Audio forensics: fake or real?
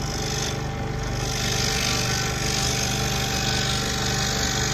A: real